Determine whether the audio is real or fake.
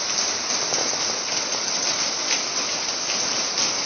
real